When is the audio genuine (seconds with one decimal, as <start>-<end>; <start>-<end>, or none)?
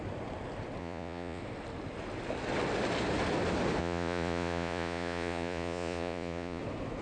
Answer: 0.0-0.8; 1.4-3.8; 6.6-7.0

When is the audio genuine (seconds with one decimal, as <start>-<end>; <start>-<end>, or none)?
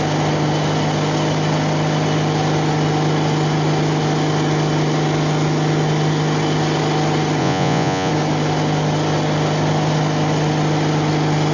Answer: 0.0-7.4; 8.1-11.5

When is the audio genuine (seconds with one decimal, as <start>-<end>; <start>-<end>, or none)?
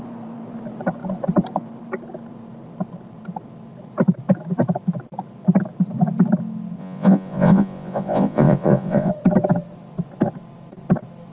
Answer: 0.0-6.8; 9.1-11.3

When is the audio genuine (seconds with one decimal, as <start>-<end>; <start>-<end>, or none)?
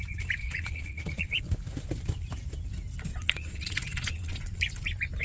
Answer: 0.0-0.4; 1.4-3.1; 4.6-5.2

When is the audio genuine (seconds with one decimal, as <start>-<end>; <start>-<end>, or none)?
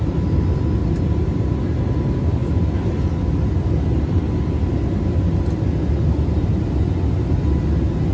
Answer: 0.0-8.1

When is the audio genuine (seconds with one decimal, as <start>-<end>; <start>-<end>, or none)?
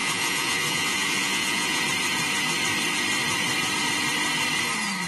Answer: 1.8-5.1